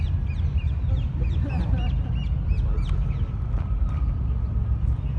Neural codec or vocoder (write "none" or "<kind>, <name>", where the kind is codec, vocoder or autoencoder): none